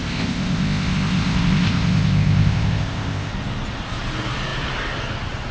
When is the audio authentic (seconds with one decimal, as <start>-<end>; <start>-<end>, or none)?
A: 3.3-5.5